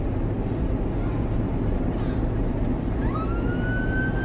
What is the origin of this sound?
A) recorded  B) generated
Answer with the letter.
A